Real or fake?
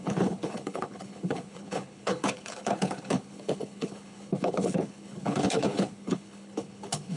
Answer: fake